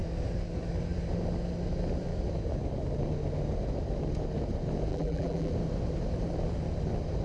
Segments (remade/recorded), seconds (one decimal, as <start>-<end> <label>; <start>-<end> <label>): 0.0-4.9 recorded; 4.9-5.5 remade; 5.5-7.2 recorded